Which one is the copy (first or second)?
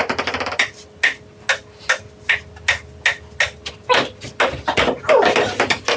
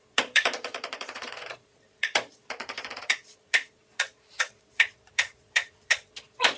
second